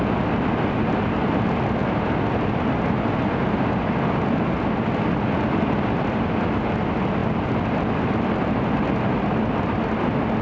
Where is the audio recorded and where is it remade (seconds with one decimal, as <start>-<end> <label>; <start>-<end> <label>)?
0.0-7.2 recorded; 7.2-8.5 remade; 8.5-10.4 recorded